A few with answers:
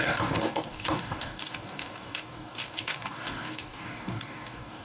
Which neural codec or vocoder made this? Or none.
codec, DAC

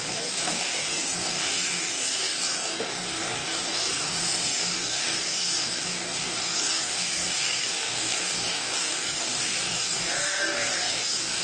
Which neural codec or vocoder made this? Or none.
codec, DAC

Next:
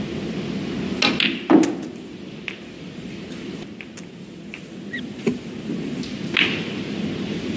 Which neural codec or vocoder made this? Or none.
none